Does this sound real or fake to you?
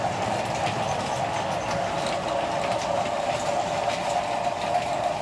real